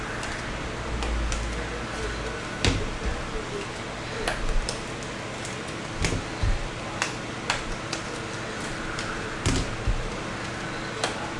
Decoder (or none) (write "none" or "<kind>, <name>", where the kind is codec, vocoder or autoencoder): none